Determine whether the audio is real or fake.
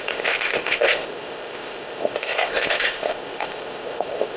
fake